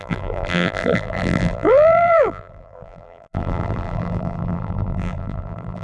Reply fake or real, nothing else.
fake